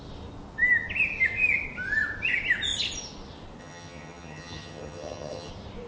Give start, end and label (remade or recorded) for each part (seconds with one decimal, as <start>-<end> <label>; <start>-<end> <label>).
0.0-3.6 recorded; 3.6-5.5 remade; 5.5-5.9 recorded